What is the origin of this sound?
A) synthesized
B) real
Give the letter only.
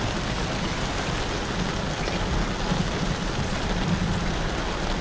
B